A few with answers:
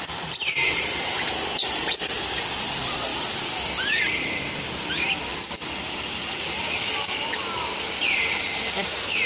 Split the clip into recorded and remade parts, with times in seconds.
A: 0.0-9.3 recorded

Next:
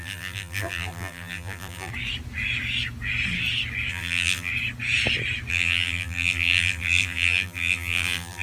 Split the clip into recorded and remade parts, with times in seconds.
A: 0.0-1.9 remade; 1.9-3.9 recorded; 3.9-4.5 remade; 4.5-5.5 recorded; 5.5-8.4 remade

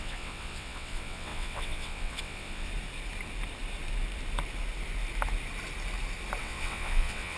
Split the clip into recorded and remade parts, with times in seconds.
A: 0.0-2.7 remade; 2.7-6.4 recorded; 6.4-7.4 remade